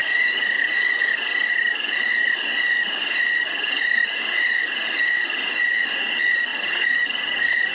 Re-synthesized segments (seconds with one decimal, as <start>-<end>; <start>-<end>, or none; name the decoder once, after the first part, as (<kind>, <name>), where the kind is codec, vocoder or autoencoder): 0.0-7.7 (codec, DAC)